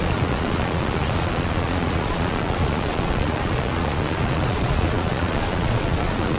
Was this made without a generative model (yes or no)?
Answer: no